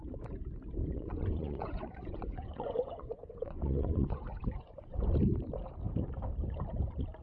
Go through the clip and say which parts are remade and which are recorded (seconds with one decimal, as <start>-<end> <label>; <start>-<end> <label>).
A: 0.0-0.9 recorded; 0.9-5.1 remade; 5.1-7.2 recorded